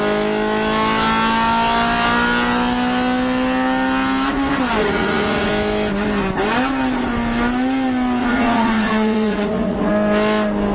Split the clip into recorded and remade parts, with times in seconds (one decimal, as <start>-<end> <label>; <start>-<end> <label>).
0.0-4.8 recorded; 4.8-5.5 remade; 5.5-8.2 recorded; 8.2-9.9 remade; 9.9-10.7 recorded